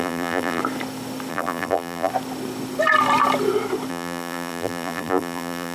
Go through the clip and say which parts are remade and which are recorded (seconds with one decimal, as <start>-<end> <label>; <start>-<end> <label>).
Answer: 0.0-0.6 remade; 0.6-1.3 recorded; 1.3-2.1 remade; 2.1-3.9 recorded; 3.9-5.7 remade